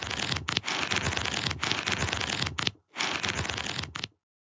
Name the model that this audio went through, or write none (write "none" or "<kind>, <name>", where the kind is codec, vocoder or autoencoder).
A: none